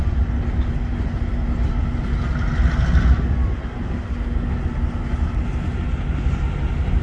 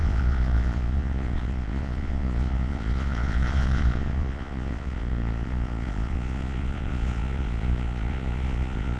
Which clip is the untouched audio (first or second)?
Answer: first